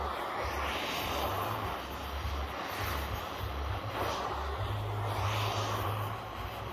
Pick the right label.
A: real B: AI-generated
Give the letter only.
A